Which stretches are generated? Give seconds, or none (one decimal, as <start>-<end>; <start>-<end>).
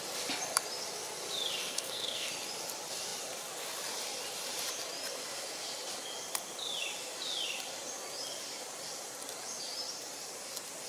1.6-2.3